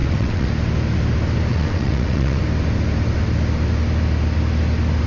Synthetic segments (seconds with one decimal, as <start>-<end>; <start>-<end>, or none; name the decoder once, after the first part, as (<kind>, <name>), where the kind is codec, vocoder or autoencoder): 0.0-0.5 (vocoder, WaveNeXt); 1.5-2.4